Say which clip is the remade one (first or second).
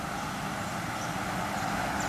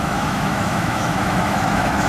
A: second